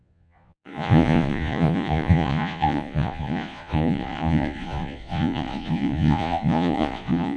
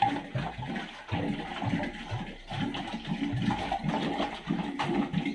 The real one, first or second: second